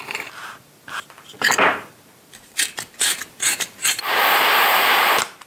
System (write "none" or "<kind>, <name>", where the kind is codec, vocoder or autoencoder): vocoder, BigVGAN v2